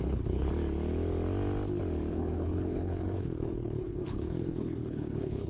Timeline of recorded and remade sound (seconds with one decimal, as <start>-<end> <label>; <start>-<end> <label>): 0.0-0.5 remade; 0.5-2.1 recorded; 2.1-5.5 remade